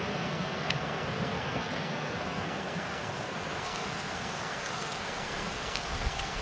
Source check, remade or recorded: remade